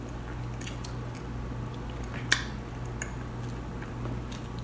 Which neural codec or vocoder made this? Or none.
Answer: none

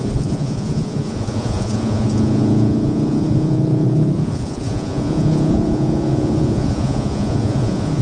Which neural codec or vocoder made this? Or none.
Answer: vocoder, Vocos